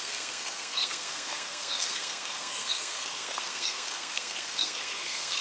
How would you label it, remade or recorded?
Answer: remade